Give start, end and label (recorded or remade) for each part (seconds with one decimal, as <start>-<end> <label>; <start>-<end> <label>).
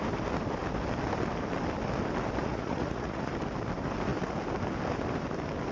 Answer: 0.0-2.4 recorded; 2.4-3.3 remade; 3.3-5.7 recorded